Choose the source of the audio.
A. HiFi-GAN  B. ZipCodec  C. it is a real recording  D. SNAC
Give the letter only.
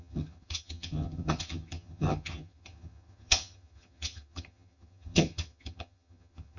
A